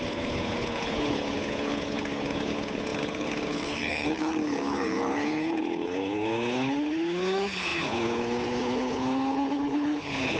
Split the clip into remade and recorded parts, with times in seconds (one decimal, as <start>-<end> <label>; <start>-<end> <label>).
0.0-10.4 remade